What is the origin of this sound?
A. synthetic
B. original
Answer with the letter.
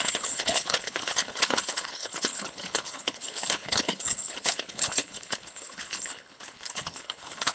A